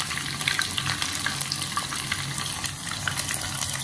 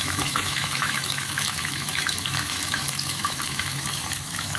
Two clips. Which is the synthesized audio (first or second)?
second